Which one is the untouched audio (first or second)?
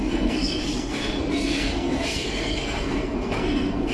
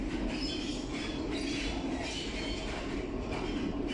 second